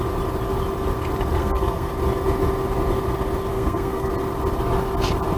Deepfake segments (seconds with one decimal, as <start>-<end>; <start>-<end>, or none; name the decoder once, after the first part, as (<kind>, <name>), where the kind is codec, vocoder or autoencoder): 1.4-1.9 (codec, SNAC); 3.5-4.1